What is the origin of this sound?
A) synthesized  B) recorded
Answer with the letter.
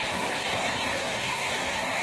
A